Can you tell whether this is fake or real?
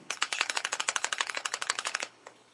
fake